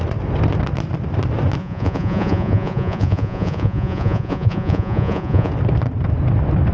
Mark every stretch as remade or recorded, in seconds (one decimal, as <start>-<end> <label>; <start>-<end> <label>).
0.0-1.6 recorded; 1.6-5.5 remade; 5.5-6.7 recorded